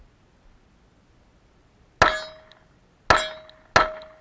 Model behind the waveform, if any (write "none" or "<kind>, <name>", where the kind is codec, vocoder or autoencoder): none